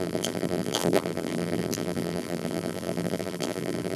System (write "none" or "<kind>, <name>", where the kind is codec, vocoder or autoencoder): vocoder, BigVGAN v2